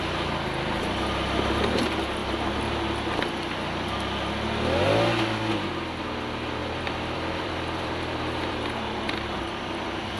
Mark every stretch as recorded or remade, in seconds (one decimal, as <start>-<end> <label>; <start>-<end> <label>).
0.0-6.6 recorded; 6.6-9.5 remade; 9.5-10.2 recorded